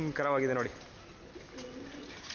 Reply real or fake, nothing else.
real